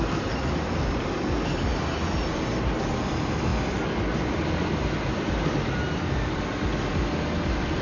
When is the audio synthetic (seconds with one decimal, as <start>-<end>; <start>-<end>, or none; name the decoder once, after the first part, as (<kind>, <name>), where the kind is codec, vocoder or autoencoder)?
none